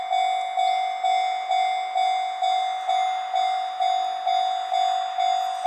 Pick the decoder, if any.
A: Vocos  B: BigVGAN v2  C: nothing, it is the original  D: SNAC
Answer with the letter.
C